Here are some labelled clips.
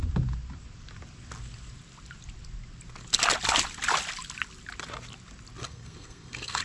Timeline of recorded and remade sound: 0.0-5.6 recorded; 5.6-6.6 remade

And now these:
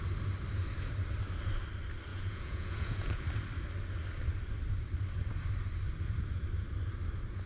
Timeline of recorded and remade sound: 0.0-2.1 recorded; 2.1-3.2 remade; 3.2-7.5 recorded

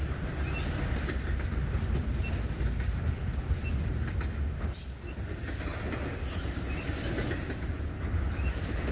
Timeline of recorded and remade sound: 0.0-8.9 recorded

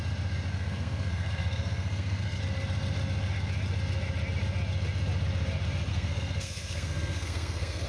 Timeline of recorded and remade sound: 0.0-0.5 recorded; 0.5-2.4 remade; 2.4-5.9 recorded; 5.9-7.9 remade

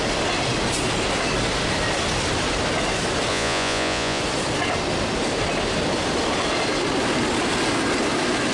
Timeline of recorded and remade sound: 0.0-3.3 recorded; 3.3-4.2 remade; 4.2-8.5 recorded

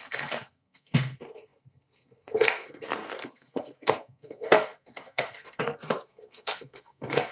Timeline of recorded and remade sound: 0.0-7.3 remade

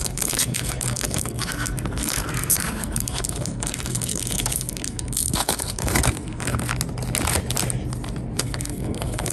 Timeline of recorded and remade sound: 0.0-6.7 remade; 6.7-8.4 recorded; 8.4-9.3 remade

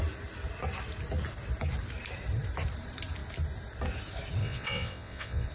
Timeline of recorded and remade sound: 0.0-4.4 recorded; 4.4-5.5 remade